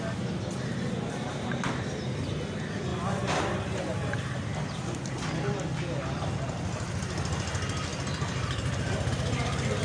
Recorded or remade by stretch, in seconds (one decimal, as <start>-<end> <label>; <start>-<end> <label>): 0.0-9.8 recorded